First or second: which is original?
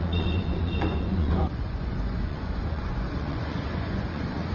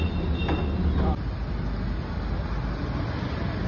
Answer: second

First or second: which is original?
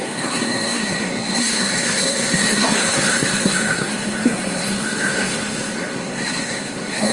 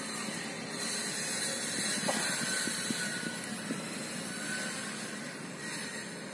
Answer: second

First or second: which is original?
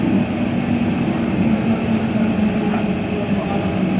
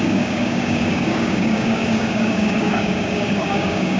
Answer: first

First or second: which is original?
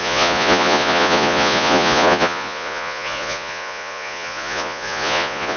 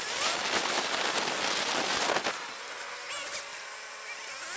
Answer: second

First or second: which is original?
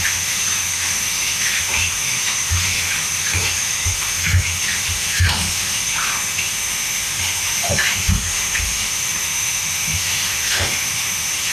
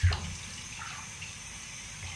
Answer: second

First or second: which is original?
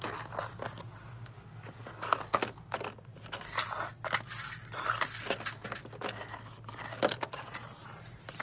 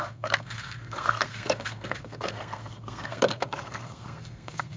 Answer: first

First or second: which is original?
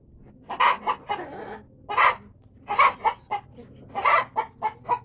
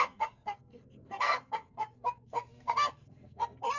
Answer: first